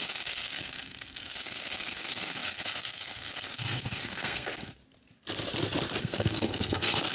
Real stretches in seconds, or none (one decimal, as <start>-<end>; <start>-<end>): 4.8-6.0